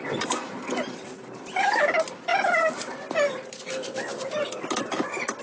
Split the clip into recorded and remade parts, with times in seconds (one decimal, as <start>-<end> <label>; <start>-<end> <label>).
0.0-5.4 recorded